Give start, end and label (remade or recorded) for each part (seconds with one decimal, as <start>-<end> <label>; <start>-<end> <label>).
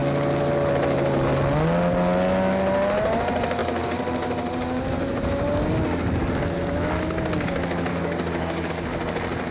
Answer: 0.0-7.9 recorded; 7.9-8.7 remade; 8.7-9.5 recorded